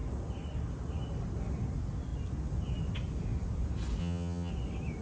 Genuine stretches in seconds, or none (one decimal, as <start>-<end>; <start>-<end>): 0.0-4.0; 4.5-5.0